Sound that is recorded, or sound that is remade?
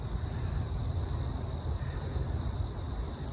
recorded